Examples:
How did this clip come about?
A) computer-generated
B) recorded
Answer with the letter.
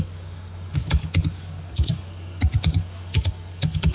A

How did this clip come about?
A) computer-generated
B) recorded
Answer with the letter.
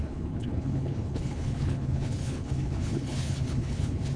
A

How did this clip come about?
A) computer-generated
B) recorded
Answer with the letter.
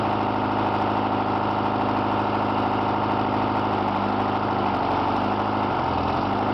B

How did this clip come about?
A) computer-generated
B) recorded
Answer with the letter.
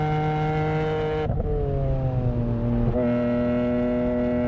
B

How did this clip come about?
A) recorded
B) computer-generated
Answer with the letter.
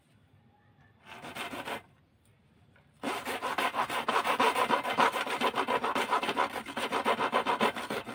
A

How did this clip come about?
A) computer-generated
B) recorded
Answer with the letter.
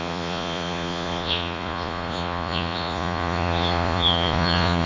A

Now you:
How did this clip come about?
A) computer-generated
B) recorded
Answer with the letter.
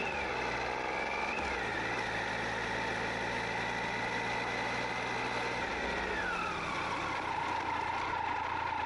B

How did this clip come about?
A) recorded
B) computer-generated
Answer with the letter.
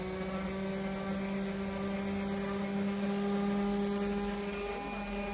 A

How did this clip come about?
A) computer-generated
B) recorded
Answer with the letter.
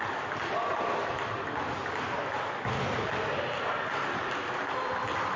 B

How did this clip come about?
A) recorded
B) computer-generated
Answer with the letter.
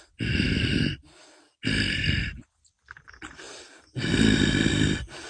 A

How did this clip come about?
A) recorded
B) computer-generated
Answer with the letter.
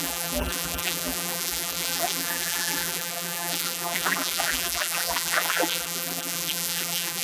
B